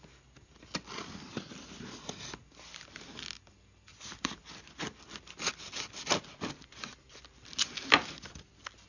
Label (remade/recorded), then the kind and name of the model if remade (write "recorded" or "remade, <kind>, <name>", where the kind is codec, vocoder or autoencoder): recorded